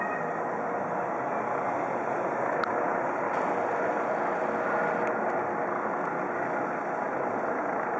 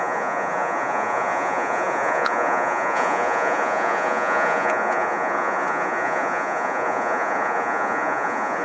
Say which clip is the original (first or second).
first